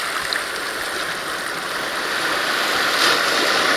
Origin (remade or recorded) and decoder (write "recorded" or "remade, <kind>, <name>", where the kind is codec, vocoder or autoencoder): recorded